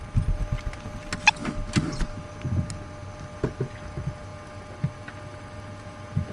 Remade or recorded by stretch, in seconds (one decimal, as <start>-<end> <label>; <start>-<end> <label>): 0.0-6.3 recorded